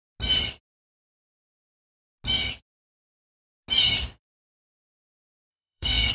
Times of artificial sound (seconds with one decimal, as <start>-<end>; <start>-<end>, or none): 5.5-6.1